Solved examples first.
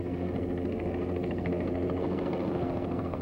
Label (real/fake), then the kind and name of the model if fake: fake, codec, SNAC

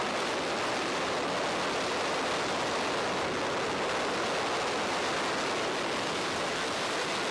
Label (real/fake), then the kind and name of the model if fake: real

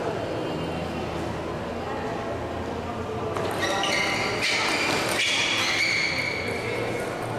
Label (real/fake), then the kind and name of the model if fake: real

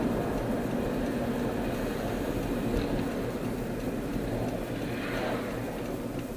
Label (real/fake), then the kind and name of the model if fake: real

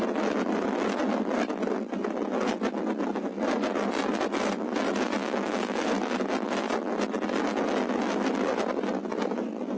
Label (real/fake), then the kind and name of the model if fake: real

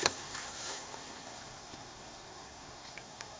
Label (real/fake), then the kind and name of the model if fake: fake, codec, SNAC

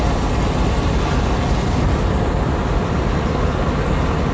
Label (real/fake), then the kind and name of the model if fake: real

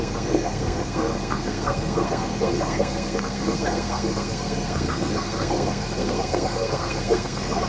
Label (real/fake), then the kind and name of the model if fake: fake, codec, SNAC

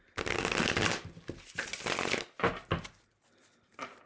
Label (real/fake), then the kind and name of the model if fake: real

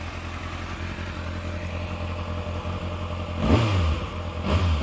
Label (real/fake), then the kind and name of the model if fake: real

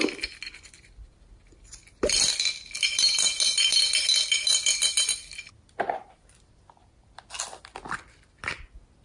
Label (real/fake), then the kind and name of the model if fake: real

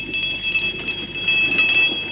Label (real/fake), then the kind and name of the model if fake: real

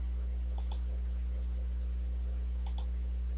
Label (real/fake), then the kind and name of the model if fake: real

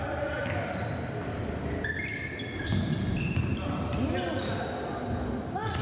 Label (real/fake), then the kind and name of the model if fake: real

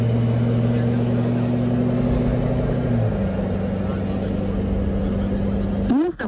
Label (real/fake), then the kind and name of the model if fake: real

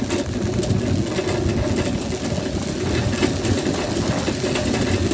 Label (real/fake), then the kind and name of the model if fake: real